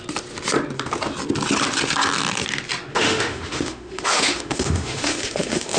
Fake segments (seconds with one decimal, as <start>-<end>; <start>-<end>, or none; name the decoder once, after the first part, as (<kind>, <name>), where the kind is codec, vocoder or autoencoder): 2.9-5.8 (autoencoder, DAC-VAE)